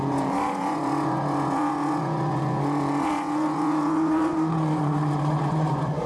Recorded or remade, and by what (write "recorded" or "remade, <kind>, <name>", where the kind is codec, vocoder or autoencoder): remade, vocoder, Vocos